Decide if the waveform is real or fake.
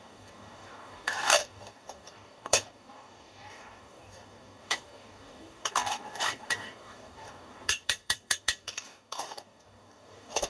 fake